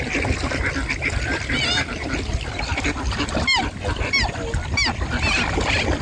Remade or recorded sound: recorded